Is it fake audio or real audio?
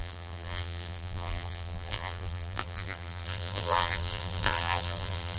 fake